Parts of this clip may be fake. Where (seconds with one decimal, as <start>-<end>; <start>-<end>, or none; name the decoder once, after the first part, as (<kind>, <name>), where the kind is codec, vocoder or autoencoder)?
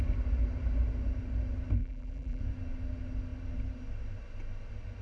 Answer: 1.8-2.4 (vocoder, BigVGAN v2)